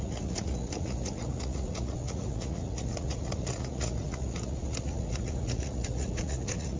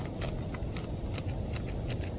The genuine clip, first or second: second